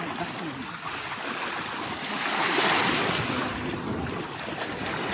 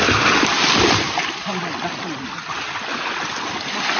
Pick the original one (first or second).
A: second